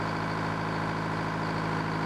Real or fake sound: real